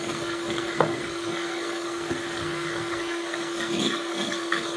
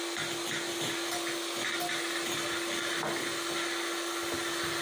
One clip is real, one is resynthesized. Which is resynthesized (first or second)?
first